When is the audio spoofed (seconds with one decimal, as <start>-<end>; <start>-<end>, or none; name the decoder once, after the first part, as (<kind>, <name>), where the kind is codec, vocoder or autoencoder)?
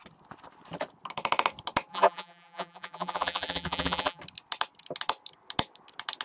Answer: 1.9-4.2 (vocoder, BigVGAN v2)